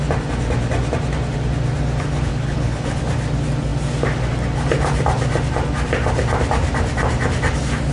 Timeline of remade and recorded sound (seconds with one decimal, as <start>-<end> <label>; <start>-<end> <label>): 0.0-2.3 recorded; 2.3-3.0 remade; 3.0-7.9 recorded

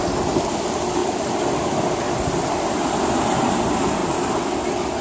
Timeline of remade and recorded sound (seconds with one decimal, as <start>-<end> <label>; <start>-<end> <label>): 0.0-5.0 recorded

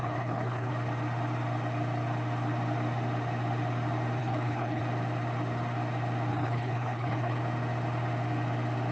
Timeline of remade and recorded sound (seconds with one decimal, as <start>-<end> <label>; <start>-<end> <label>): 0.0-0.7 remade; 0.7-4.2 recorded; 4.2-4.8 remade; 4.8-6.3 recorded; 6.3-7.4 remade; 7.4-8.9 recorded